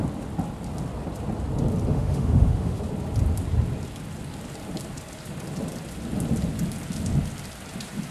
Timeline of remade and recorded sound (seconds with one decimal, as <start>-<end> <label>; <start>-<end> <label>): 0.0-1.9 recorded; 1.9-2.8 remade; 2.8-8.1 recorded